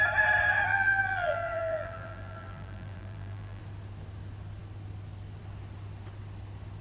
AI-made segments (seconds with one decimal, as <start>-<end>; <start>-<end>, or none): 0.7-3.6